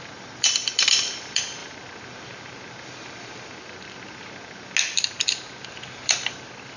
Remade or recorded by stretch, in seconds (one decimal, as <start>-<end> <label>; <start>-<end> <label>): 0.0-1.6 remade; 1.6-5.7 recorded; 5.7-6.8 remade